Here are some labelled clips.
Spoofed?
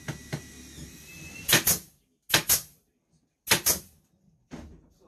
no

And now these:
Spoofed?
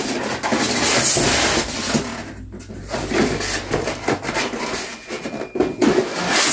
no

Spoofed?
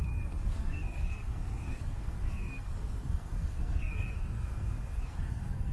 yes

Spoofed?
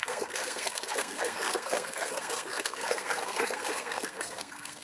yes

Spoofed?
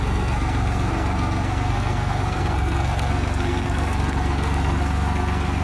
yes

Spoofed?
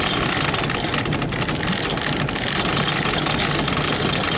no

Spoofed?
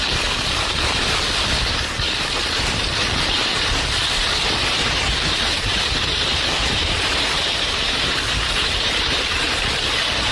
yes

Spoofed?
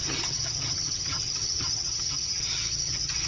yes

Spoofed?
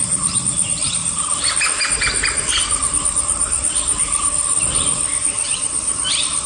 yes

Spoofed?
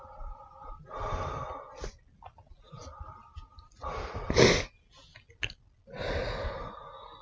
no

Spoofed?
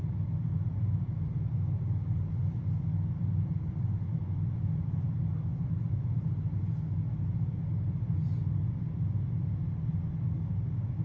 no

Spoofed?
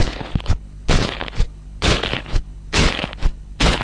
yes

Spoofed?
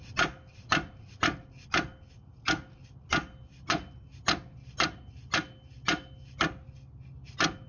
no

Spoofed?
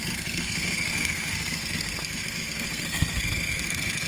yes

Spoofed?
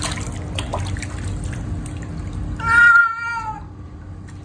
no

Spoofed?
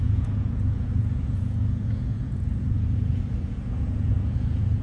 yes